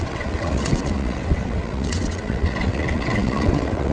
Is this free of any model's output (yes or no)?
no